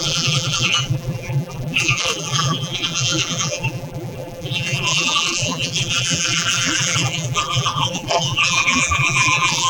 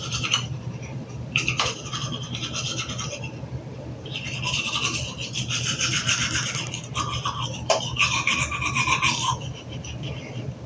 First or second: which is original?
second